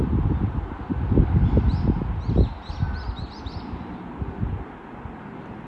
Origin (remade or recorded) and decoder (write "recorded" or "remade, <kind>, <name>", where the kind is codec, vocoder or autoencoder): recorded